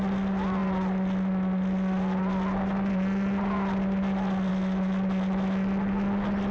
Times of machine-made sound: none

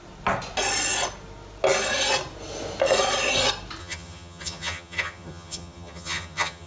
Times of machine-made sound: 3.8-6.7 (vocoder, HiFi-GAN)

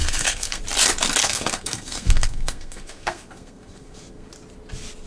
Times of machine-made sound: 0.0-0.6 (codec, SNAC); 1.2-4.3

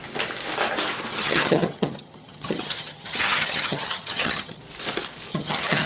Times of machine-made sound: 1.1-4.6 (vocoder, HiFi-GAN); 5.3-5.9

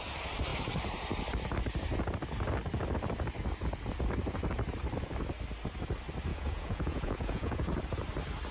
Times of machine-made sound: 6.3-7.8 (vocoder, Vocos)

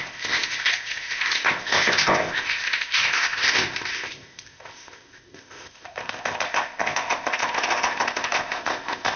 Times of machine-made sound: 0.0-9.2 (codec, ZipCodec)

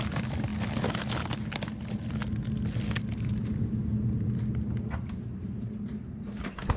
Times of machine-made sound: 0.0-0.5 (vocoder, BigVGAN v2); 3.1-3.8; 4.9-6.8